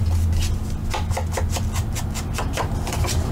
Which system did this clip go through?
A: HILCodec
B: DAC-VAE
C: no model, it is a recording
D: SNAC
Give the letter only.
C